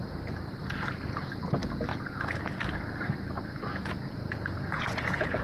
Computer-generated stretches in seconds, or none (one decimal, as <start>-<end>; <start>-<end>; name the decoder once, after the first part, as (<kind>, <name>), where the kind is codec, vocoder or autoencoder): 1.9-2.4 (vocoder, Vocos); 3.7-5.4